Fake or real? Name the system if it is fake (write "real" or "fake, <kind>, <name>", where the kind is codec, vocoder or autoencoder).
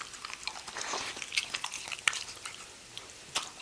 fake, vocoder, BigVGAN v2